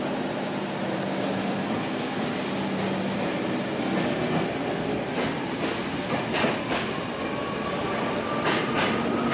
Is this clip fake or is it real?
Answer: real